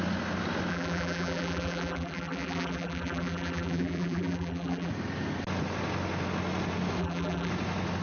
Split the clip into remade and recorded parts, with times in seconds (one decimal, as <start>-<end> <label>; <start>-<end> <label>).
0.0-0.7 recorded; 0.7-4.9 remade; 4.9-7.0 recorded; 7.0-7.5 remade; 7.5-8.0 recorded